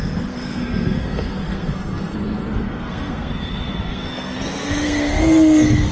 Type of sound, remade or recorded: remade